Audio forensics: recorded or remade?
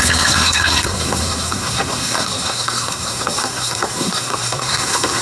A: remade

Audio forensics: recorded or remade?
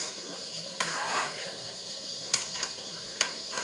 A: remade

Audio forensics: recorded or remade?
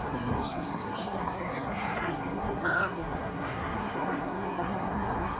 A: remade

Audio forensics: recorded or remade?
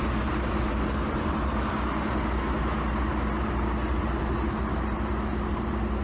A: recorded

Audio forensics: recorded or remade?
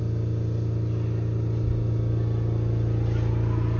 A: recorded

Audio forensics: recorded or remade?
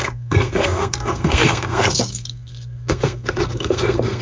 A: remade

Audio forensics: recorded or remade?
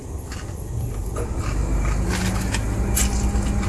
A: recorded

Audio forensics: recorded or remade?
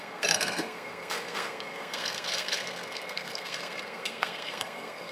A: remade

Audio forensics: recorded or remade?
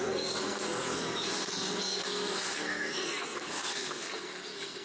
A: remade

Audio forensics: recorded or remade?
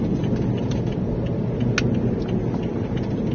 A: recorded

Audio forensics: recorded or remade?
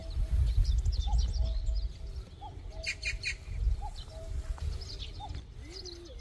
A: recorded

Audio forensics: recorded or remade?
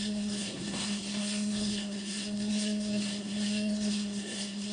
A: remade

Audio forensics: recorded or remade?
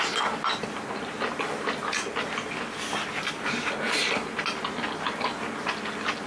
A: recorded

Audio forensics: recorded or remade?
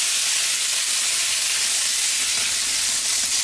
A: recorded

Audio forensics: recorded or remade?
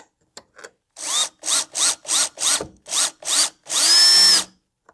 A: recorded